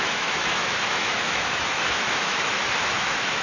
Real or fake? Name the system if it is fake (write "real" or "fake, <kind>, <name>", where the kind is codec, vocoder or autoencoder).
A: fake, autoencoder, DAC-VAE